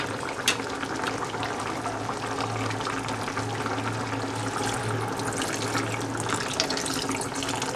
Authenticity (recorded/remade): recorded